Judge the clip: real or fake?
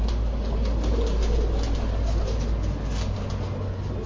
real